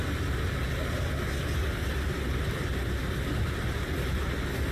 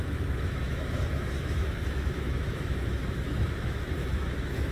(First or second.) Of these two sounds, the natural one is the first